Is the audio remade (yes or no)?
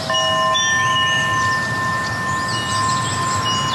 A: no